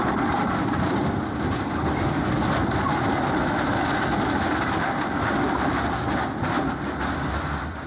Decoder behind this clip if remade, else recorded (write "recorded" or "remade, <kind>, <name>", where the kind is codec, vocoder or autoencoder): recorded